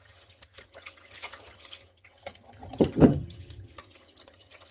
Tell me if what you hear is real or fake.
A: fake